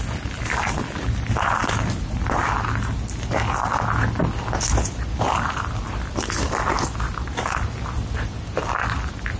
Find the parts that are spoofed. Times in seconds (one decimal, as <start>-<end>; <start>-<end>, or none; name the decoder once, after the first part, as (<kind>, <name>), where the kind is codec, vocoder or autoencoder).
none